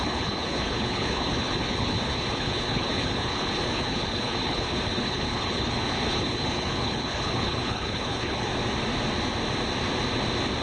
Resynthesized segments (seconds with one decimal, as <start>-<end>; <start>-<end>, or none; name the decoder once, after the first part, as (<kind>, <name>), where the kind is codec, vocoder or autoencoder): 0.0-8.5 (codec, HILCodec)